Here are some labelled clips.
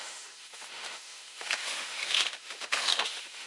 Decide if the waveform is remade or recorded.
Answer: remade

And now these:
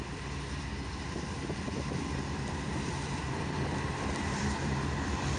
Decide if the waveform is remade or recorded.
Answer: remade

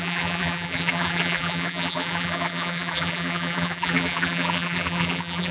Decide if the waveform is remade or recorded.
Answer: remade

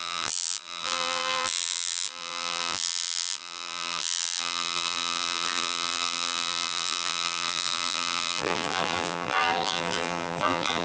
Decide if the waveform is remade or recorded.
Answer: remade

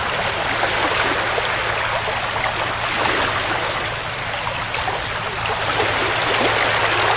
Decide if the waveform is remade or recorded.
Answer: recorded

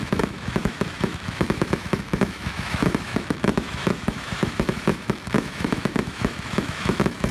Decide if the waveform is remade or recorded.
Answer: remade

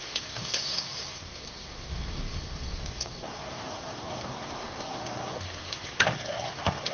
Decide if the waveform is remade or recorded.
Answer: remade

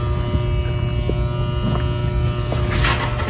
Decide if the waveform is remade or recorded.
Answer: recorded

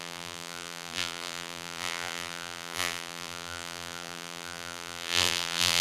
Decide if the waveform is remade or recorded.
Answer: remade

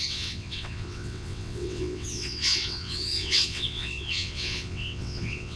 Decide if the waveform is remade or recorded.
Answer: remade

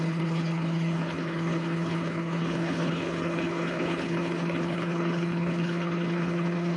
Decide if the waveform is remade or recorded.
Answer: remade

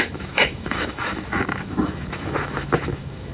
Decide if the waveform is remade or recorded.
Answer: remade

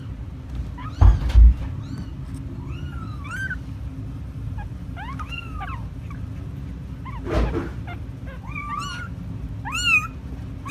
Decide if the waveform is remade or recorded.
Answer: recorded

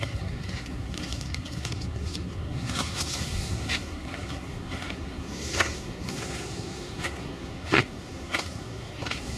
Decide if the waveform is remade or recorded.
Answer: remade